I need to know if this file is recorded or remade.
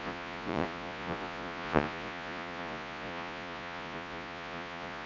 remade